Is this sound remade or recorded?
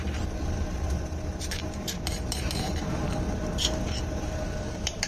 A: remade